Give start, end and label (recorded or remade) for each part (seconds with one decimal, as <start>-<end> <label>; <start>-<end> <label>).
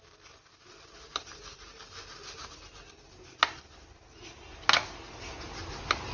0.0-6.1 recorded